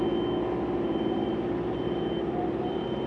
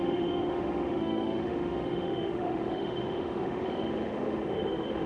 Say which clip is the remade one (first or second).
second